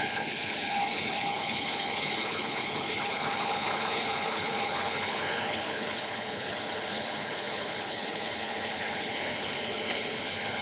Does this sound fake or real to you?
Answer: fake